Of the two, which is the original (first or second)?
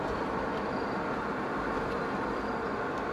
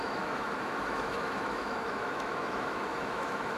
first